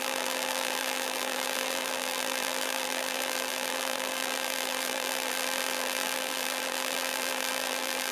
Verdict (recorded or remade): remade